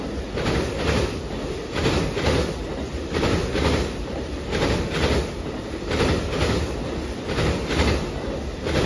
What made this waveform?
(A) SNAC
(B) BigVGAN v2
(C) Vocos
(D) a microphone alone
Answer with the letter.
D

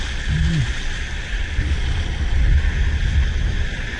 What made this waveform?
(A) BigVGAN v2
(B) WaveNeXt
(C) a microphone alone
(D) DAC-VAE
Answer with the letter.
C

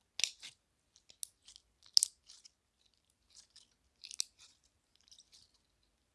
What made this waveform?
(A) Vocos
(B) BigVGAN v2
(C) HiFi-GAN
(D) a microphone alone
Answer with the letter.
D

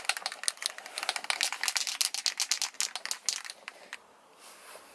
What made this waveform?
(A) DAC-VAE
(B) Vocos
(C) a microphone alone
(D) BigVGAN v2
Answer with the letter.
C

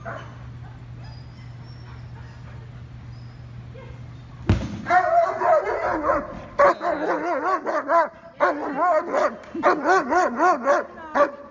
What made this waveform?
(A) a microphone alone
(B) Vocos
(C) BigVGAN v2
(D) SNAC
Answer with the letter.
A